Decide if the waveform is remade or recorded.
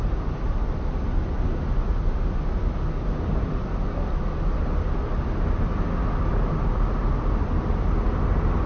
recorded